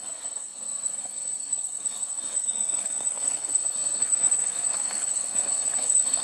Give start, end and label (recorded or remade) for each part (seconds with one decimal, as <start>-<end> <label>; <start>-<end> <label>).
0.0-6.2 remade